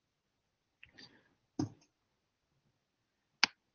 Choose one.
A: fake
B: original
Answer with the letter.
B